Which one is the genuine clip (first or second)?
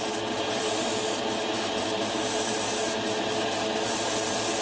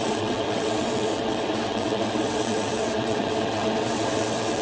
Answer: first